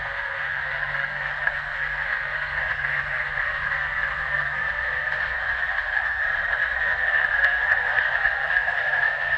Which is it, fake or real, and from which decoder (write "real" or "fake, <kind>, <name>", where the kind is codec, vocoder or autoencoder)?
fake, codec, SNAC